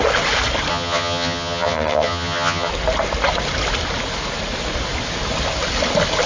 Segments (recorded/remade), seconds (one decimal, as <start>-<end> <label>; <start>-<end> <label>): 0.0-0.7 recorded; 0.7-2.7 remade; 2.7-6.3 recorded